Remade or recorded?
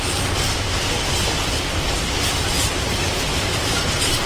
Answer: recorded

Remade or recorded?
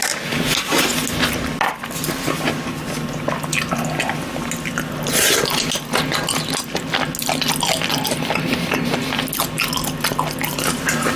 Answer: recorded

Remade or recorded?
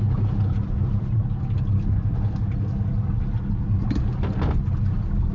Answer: recorded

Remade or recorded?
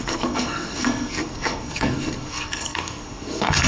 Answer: remade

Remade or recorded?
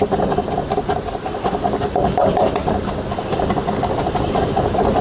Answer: recorded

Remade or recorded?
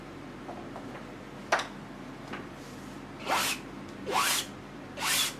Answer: recorded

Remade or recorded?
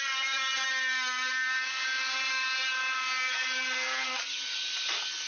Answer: recorded